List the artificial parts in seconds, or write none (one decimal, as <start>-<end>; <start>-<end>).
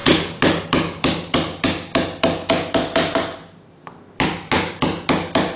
none